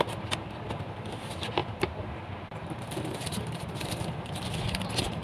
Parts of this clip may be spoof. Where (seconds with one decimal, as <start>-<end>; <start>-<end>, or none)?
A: 1.6-4.5

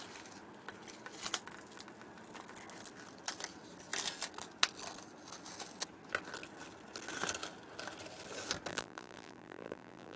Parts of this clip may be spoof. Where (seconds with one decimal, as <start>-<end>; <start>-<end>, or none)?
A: 8.7-10.2

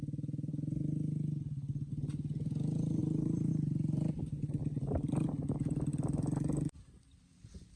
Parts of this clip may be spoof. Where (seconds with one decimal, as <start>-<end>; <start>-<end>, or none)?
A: 3.0-3.5; 4.6-5.1